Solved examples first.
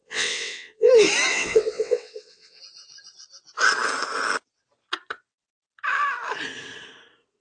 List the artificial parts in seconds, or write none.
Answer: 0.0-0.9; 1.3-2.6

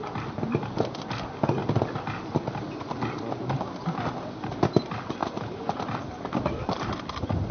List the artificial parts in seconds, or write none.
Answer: none